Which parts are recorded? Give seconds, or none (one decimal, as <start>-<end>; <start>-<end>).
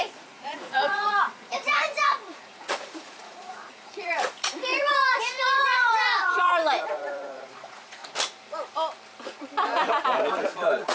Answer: 8.0-10.3